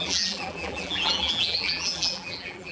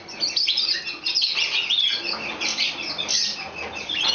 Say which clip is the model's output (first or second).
first